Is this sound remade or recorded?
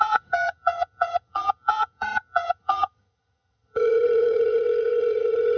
remade